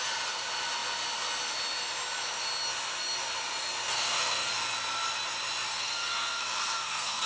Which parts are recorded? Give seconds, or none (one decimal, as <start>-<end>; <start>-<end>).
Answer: 0.0-3.9; 4.5-5.7